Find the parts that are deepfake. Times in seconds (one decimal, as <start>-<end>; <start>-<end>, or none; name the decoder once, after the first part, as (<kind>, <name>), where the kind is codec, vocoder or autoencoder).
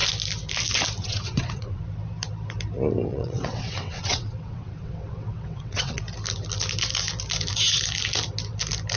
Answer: 1.0-1.8 (vocoder, WaveNeXt); 3.1-6.0